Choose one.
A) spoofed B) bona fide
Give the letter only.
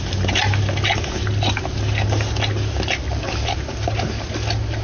B